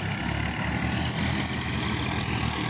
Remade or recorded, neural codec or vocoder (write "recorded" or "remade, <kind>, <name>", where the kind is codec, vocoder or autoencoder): recorded